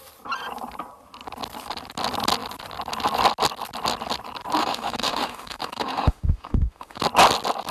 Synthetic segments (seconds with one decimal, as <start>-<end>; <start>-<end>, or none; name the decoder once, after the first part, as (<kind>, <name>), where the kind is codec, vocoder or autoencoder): 4.6-7.0 (autoencoder, DAC-VAE)